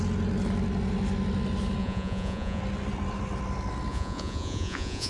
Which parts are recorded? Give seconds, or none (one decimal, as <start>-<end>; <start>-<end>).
0.0-1.8; 2.6-3.9